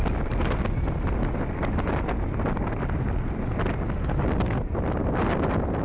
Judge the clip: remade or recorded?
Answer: recorded